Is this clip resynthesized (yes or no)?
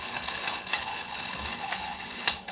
yes